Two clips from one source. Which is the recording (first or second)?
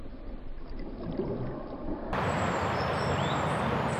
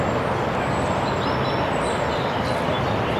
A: second